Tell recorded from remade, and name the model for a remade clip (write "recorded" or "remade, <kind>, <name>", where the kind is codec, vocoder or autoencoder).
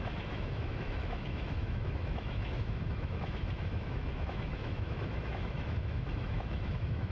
remade, autoencoder, DAC-VAE